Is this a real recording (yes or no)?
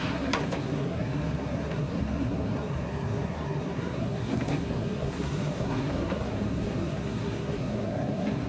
no